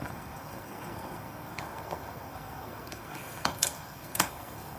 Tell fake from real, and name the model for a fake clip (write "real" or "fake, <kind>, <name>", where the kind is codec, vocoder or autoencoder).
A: fake, codec, SNAC